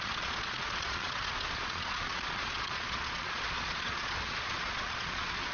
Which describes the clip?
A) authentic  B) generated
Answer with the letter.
B